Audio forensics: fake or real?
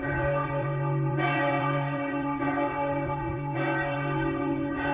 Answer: fake